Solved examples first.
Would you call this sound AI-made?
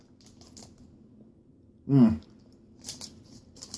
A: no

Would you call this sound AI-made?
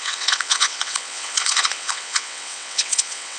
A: yes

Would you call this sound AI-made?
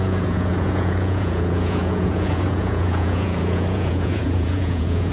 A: yes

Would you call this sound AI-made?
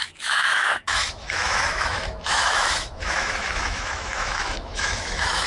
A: yes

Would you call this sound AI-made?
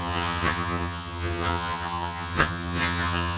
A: yes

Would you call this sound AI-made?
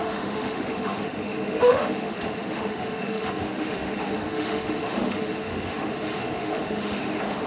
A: yes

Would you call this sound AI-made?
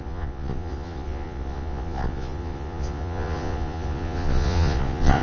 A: yes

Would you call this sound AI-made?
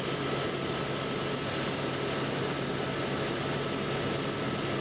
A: no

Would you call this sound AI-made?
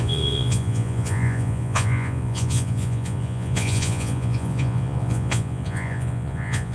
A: yes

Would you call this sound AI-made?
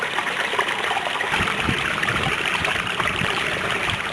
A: yes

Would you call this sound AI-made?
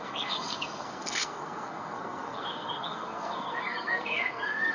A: yes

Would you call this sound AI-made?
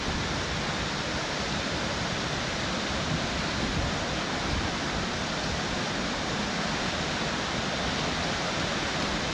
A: no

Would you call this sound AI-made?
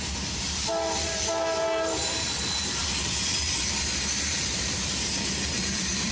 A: yes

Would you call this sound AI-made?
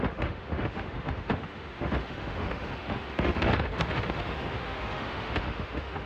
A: yes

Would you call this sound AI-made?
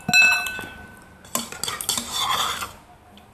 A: no